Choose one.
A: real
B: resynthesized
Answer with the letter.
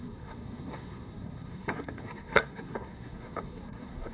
B